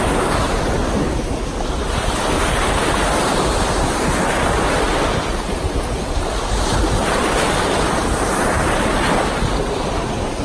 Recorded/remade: recorded